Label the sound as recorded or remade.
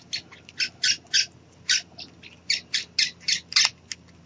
recorded